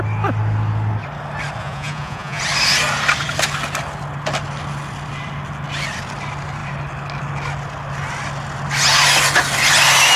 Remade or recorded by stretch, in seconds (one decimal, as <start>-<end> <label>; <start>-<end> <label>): 0.0-1.6 recorded; 1.6-2.4 remade; 2.4-10.2 recorded